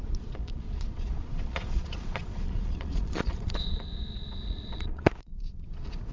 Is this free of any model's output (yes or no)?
no